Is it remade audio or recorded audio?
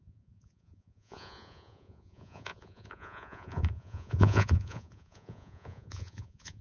remade